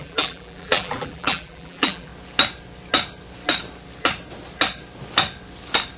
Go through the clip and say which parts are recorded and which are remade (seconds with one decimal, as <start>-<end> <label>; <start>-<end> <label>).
0.0-2.1 remade; 2.1-6.0 recorded